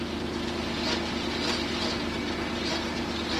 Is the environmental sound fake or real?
real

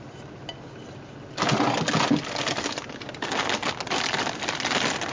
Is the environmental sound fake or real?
real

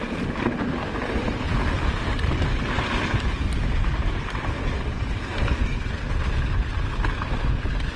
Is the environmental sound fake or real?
real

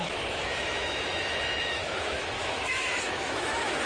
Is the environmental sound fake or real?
fake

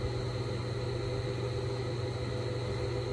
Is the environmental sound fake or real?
real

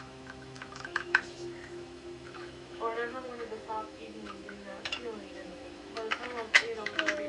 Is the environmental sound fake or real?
fake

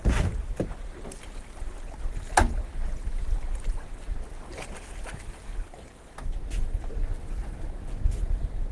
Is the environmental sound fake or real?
real